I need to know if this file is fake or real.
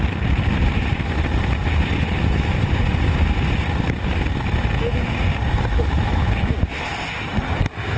real